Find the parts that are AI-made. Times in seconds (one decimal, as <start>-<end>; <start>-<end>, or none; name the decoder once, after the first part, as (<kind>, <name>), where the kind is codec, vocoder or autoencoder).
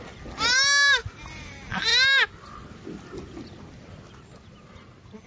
none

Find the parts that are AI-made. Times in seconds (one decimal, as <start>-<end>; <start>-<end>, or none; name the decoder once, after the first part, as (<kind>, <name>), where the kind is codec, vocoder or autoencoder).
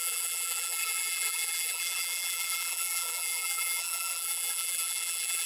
0.0-5.5 (vocoder, BigVGAN v2)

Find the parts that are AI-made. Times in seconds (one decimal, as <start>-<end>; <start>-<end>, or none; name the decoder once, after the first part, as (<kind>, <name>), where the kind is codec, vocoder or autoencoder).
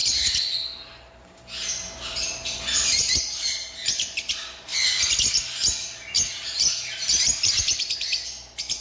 none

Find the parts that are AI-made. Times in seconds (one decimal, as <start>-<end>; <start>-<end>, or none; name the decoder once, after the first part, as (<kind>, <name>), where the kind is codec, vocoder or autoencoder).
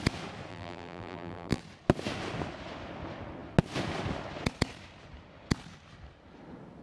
0.5-1.6 (vocoder, BigVGAN v2)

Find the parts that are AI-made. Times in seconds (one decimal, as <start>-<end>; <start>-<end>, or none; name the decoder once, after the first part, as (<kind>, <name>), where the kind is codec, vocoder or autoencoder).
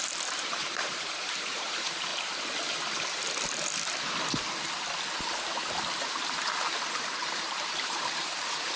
0.0-2.1 (vocoder, BigVGAN v2); 6.9-8.8